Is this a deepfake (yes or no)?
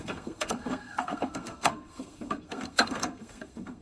yes